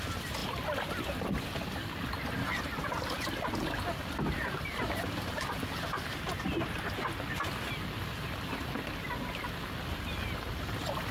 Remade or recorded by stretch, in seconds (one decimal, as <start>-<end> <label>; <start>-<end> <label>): 0.0-11.1 recorded